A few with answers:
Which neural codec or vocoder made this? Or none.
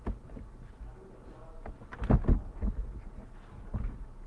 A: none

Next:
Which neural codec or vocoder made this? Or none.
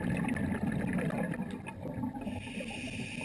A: none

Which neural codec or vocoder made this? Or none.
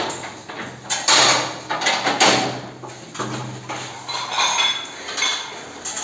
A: none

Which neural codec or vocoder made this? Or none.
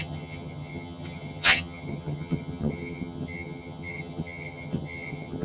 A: vocoder, HiFi-GAN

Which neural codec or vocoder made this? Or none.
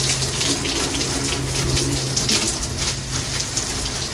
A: none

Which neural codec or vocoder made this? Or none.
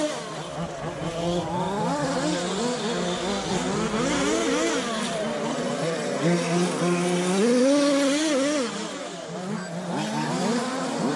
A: none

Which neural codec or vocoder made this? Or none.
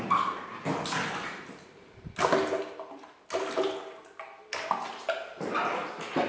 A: none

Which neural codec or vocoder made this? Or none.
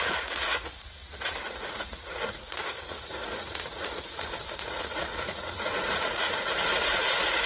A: vocoder, Vocos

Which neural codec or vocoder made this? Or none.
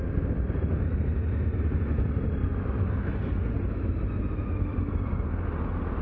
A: none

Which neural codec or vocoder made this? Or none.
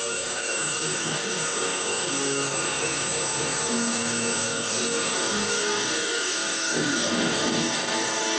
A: codec, DAC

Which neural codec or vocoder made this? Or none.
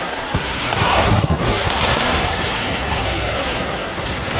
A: codec, SNAC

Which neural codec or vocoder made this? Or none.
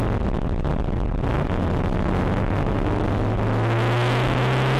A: none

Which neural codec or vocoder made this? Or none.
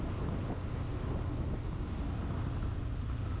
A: none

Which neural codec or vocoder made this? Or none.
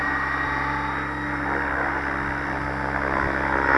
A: none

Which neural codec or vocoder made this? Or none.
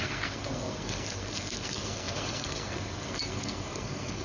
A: codec, SNAC